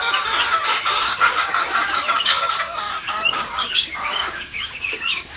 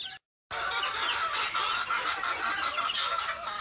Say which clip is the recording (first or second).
second